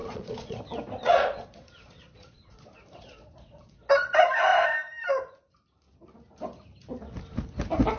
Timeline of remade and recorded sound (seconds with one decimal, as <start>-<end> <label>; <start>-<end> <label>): 0.0-0.6 remade; 0.6-1.0 recorded; 1.0-3.9 remade; 3.9-8.0 recorded